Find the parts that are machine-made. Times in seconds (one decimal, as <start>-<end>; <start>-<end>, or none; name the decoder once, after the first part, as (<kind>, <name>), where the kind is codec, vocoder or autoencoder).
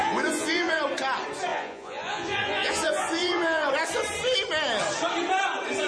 0.0-0.8 (vocoder, Vocos); 1.5-3.7